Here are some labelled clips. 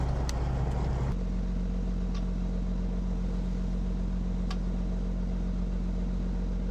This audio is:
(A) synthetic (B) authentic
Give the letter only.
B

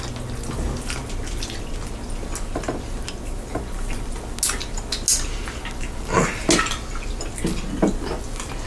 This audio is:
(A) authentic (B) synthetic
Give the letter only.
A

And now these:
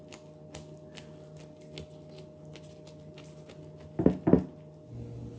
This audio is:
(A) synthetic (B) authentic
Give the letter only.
B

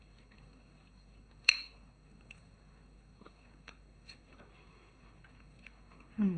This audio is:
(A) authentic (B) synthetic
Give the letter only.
B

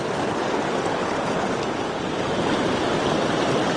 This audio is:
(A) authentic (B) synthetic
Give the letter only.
A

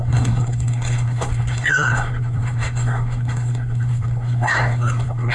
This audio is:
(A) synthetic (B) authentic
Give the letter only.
A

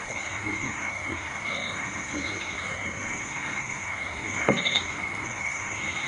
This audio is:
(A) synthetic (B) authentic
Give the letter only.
A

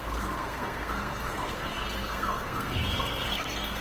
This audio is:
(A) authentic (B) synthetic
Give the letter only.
B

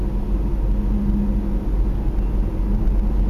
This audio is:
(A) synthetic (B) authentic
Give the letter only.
B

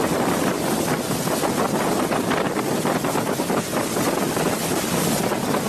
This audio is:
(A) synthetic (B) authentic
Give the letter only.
B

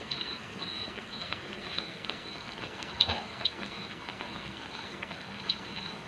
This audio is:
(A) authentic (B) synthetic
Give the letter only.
B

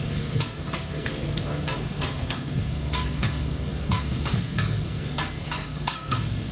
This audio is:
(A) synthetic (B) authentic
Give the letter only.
A